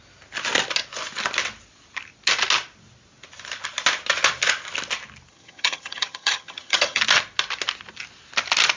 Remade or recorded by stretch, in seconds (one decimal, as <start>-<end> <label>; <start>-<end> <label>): 0.0-5.3 recorded; 5.3-7.0 remade; 7.0-8.8 recorded